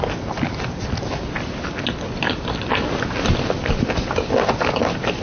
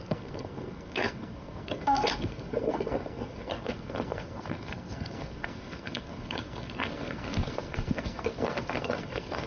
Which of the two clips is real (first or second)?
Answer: first